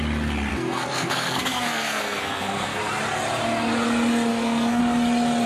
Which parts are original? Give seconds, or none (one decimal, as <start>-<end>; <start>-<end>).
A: 0.0-0.5; 2.8-4.3; 4.8-5.5